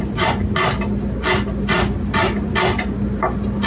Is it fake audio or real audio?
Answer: real